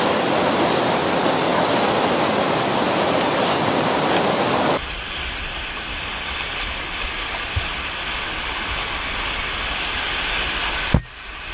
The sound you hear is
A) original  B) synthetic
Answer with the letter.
A